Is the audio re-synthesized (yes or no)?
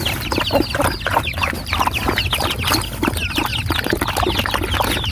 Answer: no